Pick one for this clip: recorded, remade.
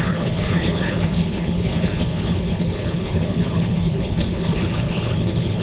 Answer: remade